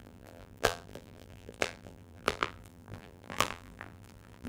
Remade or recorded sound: remade